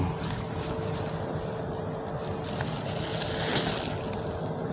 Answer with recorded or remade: recorded